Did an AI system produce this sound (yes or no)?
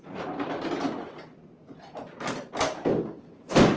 no